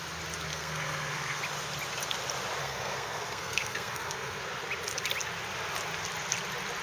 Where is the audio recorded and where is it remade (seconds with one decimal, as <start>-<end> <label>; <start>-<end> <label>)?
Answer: 0.0-0.5 recorded; 0.5-1.4 remade; 1.4-2.6 recorded; 2.6-4.4 remade; 4.4-6.8 recorded